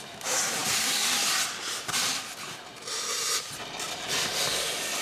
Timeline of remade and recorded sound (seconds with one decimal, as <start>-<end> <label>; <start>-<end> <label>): 0.0-5.0 recorded